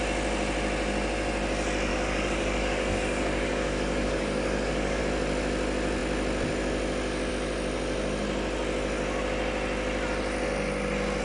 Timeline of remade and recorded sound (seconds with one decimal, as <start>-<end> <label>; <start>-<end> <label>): 0.0-1.9 recorded; 1.9-5.0 remade; 5.0-11.2 recorded